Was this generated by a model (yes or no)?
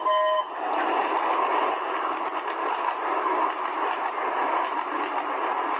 no